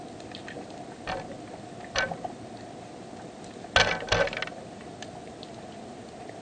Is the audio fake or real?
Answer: real